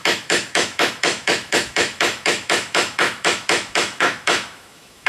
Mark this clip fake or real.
fake